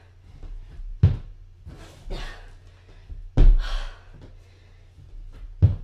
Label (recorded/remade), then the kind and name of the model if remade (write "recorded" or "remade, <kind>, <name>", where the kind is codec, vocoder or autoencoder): recorded